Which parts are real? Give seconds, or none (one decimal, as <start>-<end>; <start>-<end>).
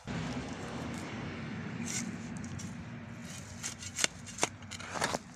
0.0-0.4; 2.0-5.4